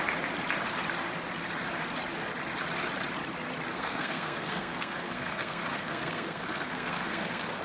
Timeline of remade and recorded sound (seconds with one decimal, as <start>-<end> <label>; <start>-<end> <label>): 0.0-3.7 recorded; 3.7-7.6 remade